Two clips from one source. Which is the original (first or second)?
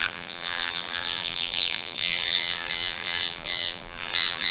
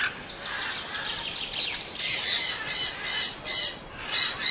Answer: second